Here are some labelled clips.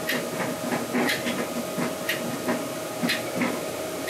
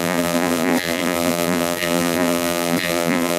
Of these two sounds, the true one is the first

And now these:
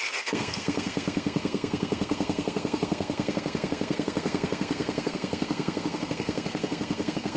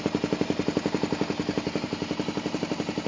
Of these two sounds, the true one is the second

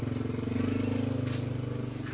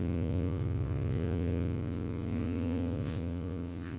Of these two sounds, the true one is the first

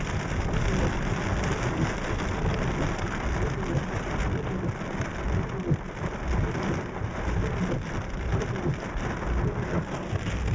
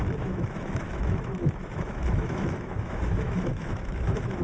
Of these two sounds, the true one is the first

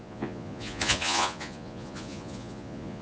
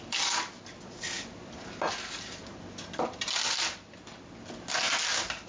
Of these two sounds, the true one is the second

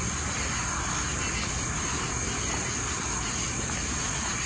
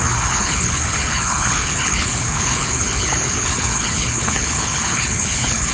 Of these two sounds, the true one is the first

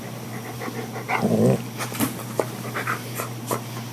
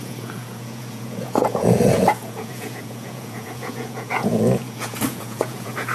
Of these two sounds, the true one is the first